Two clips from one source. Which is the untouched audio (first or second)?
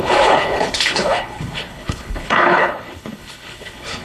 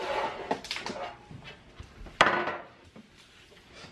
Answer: second